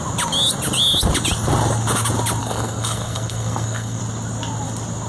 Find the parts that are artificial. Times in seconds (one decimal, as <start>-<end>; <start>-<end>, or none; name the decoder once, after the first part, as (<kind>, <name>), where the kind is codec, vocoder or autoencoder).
2.4-4.0 (codec, SNAC)